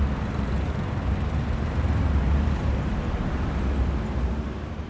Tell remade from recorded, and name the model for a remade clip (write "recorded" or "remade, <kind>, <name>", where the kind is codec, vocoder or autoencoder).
remade, vocoder, BigVGAN v2